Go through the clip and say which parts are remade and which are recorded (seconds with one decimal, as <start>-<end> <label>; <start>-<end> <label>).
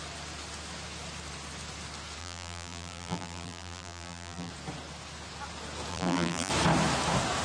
0.0-2.2 recorded; 2.2-4.5 remade; 4.5-5.9 recorded; 5.9-6.5 remade; 6.5-7.4 recorded